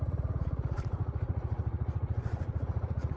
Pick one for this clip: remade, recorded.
remade